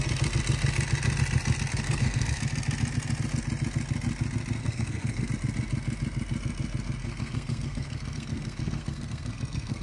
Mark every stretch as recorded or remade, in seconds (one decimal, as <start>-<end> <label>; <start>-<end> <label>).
0.0-1.7 recorded; 1.7-2.4 remade; 2.4-4.6 recorded; 4.6-5.3 remade; 5.3-7.0 recorded; 7.0-9.8 remade

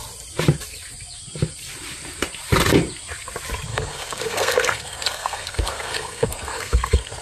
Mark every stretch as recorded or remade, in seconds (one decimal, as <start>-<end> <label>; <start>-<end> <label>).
0.0-3.7 recorded; 3.7-7.2 remade

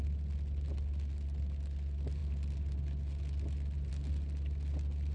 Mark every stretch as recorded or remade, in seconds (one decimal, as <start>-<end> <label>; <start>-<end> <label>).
0.0-5.1 recorded